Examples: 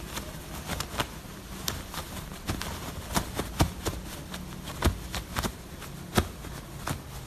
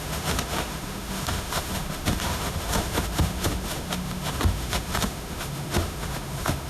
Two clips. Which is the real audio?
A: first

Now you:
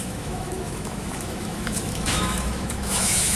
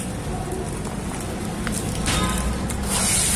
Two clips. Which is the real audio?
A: second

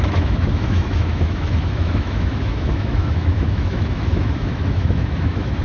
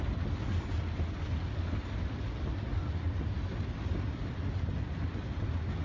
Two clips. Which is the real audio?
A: second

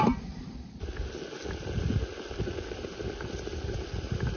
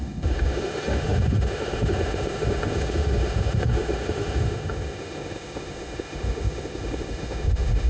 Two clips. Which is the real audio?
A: first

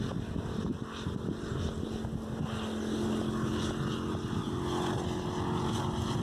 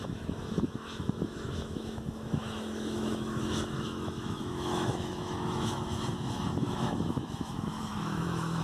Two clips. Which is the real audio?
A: first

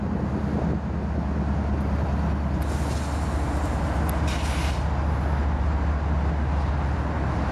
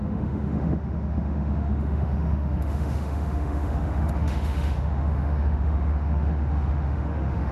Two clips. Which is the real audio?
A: first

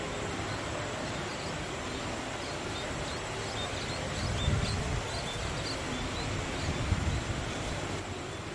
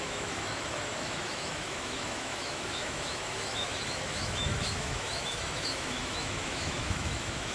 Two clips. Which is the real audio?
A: first